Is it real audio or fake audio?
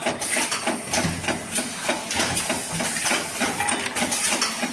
real